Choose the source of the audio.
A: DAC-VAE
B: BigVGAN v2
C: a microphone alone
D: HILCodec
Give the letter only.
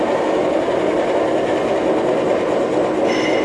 C